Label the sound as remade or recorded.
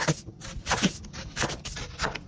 recorded